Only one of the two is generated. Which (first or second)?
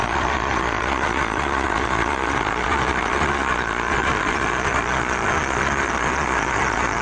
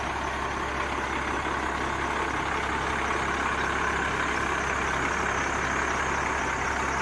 first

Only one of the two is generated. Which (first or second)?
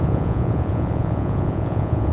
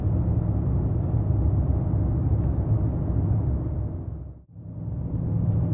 first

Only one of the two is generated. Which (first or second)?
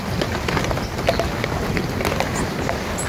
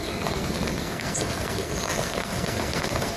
second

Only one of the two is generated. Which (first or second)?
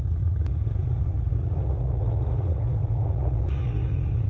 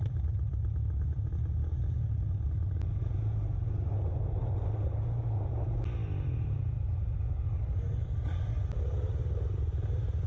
first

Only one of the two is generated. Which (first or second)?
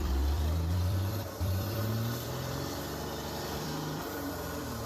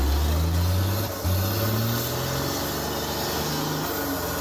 first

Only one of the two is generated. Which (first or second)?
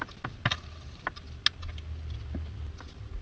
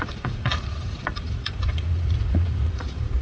second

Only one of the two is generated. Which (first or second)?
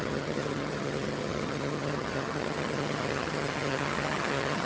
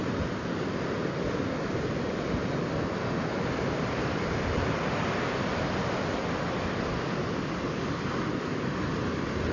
first